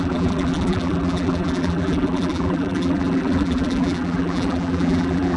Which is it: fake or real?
fake